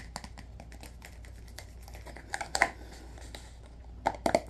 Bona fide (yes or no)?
yes